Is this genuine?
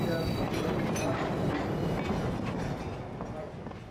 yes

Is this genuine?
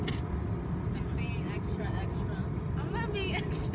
yes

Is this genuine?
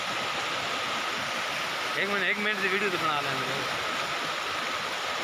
yes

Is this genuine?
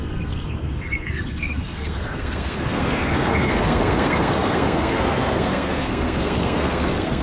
no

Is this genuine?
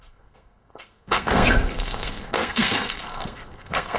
no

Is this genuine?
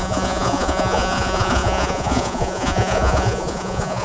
no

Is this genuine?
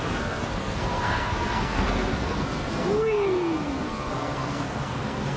no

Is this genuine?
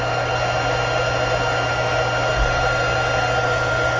yes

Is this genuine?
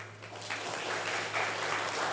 yes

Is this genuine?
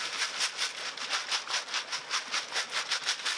yes